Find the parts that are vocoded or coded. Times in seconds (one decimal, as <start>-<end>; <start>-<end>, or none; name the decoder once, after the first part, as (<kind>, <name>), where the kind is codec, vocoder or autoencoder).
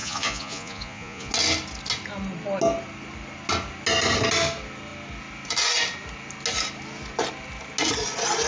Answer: 0.0-1.3 (vocoder, Vocos)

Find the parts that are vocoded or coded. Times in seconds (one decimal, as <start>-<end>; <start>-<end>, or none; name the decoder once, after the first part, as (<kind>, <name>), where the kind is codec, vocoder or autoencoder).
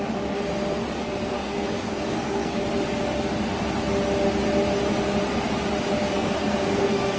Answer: 1.0-2.6 (codec, SNAC); 6.0-7.2